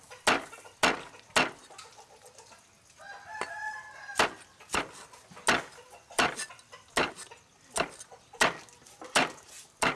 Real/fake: real